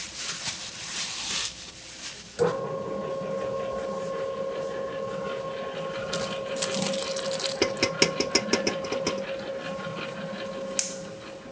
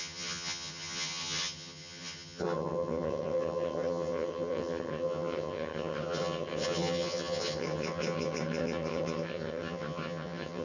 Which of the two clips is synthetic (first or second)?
second